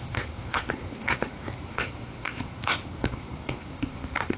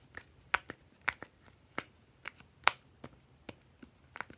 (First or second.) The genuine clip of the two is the second